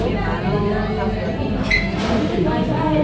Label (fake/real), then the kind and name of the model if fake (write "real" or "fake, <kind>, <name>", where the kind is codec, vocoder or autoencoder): real